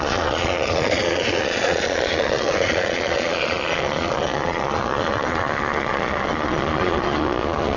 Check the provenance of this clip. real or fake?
fake